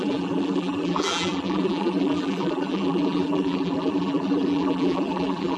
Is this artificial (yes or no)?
yes